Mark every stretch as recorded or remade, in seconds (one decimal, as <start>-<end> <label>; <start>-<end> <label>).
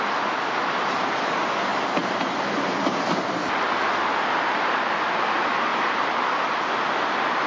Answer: 0.0-7.5 recorded